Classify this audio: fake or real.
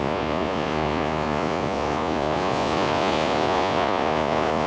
fake